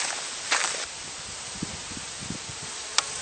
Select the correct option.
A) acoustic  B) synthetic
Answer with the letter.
A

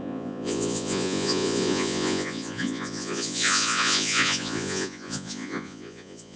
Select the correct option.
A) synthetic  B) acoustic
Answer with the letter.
A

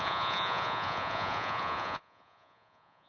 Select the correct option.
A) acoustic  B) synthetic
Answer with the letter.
B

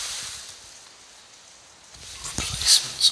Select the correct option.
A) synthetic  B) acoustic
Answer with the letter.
B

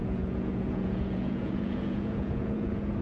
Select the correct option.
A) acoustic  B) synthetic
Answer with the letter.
B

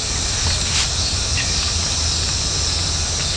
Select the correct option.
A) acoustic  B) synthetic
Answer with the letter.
A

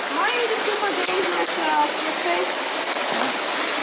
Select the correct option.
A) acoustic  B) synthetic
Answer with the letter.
A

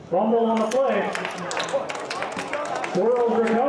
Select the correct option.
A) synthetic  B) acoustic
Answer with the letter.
B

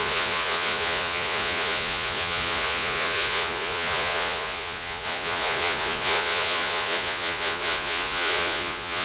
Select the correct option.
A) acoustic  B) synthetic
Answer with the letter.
B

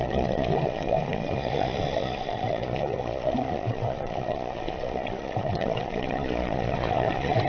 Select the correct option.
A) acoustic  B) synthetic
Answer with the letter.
B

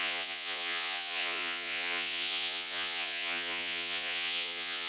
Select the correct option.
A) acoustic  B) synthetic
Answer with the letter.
B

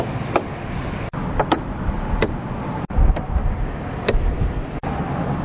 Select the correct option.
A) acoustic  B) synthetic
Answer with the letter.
A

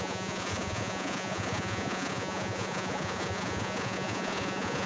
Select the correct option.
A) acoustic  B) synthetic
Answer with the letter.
B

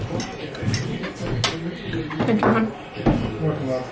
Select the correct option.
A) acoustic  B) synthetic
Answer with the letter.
A